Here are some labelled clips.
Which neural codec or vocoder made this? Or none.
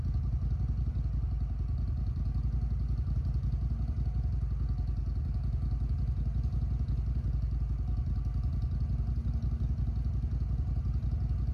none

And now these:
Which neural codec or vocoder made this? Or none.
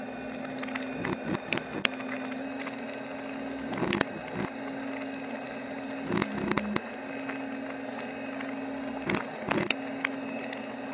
none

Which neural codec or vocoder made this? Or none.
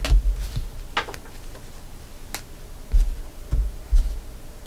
none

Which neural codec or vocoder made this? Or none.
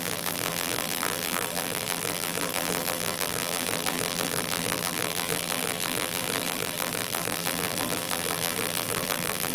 vocoder, BigVGAN v2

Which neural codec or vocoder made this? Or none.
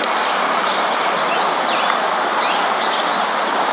none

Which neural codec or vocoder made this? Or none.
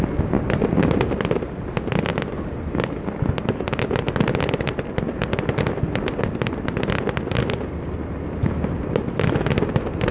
none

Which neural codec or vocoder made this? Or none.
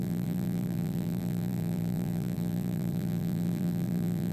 vocoder, BigVGAN v2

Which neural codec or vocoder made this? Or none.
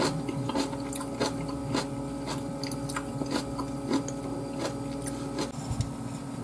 none